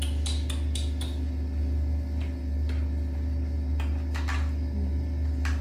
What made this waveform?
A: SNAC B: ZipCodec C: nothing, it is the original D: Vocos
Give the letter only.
C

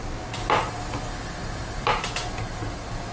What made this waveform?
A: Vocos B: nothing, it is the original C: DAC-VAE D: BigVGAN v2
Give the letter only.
B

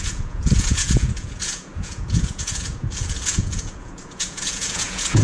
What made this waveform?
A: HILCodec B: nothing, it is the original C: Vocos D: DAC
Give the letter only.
C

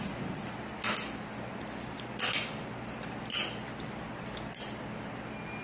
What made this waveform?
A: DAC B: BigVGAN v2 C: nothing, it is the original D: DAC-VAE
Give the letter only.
C